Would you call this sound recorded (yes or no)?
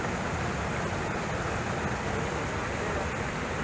yes